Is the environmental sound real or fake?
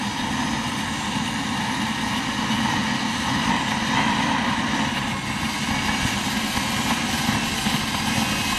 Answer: real